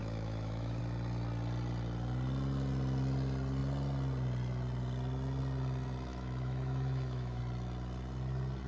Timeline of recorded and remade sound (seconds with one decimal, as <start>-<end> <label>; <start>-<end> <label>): 0.0-0.8 remade; 0.8-6.1 recorded; 6.1-7.4 remade; 7.4-8.7 recorded